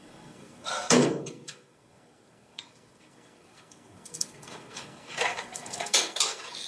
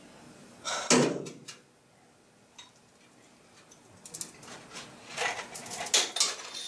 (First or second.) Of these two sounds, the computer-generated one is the first